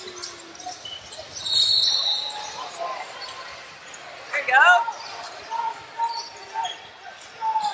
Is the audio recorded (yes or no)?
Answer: yes